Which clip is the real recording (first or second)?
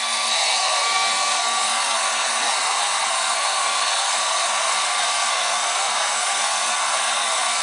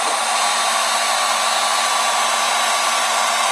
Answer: second